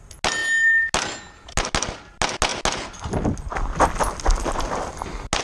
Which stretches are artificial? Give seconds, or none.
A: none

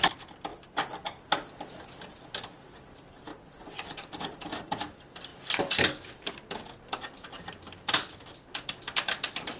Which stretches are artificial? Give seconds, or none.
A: 3.3-4.1

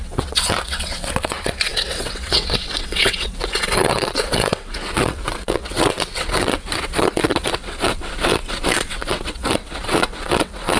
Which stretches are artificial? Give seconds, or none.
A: 0.0-10.8

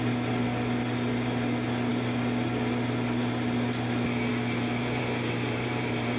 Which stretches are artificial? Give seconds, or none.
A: 4.8-6.2

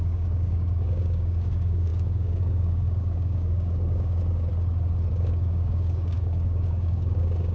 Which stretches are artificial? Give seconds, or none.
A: 0.0-4.5; 5.1-7.5

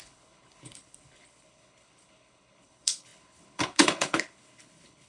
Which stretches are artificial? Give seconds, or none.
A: 0.0-5.1

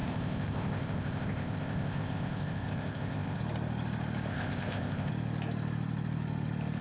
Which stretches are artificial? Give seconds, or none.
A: 0.0-3.4; 4.3-5.1

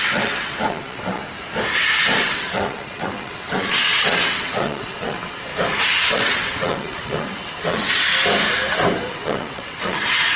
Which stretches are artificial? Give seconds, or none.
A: 0.0-1.2; 2.2-5.5; 6.1-8.1; 9.1-10.4